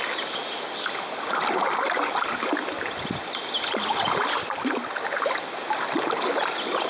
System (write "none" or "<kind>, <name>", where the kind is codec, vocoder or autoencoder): none